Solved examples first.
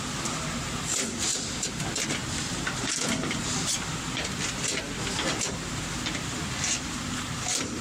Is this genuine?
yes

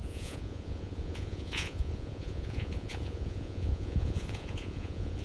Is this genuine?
no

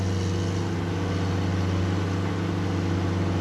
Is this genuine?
yes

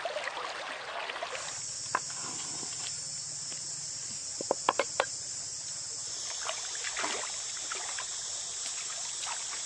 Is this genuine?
yes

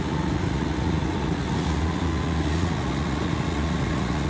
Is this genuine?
no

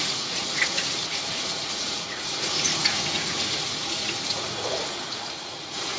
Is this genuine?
no